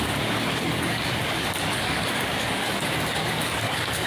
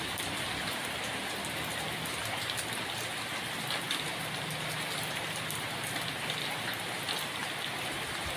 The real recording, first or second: second